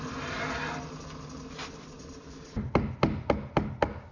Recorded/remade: recorded